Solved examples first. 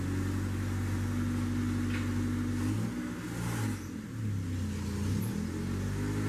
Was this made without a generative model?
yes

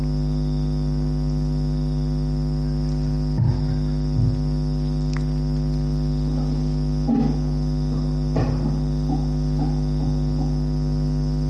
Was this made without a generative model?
yes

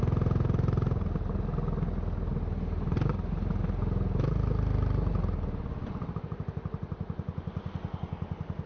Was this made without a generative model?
yes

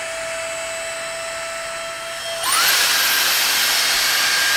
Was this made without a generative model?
yes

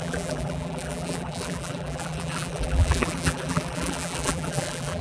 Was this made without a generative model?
no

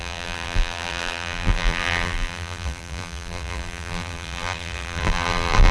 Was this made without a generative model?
no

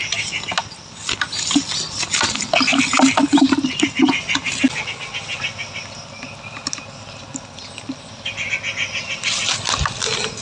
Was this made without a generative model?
yes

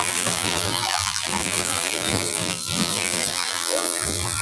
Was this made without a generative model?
no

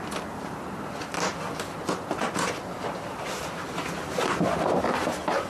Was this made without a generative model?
yes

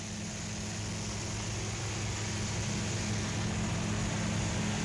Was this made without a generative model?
yes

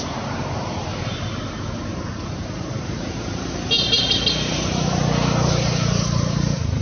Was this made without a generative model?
no